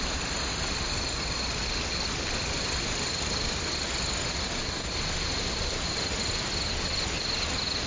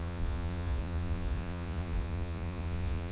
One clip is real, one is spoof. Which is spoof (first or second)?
second